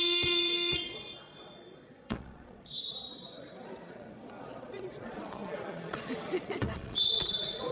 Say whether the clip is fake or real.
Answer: fake